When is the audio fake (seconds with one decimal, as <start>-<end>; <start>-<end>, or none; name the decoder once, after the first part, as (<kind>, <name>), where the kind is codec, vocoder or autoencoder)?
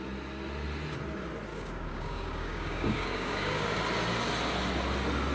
1.5-3.8 (codec, DAC)